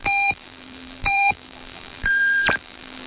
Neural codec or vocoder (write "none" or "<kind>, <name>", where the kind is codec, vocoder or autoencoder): vocoder, BigVGAN v2